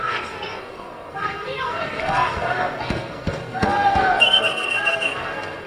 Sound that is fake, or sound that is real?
fake